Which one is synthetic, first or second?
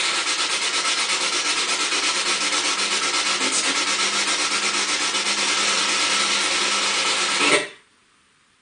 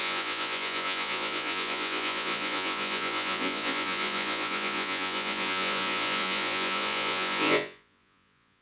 second